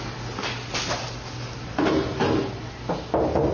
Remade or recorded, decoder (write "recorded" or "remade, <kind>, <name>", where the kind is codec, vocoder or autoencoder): recorded